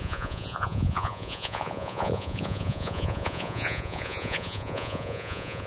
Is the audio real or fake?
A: fake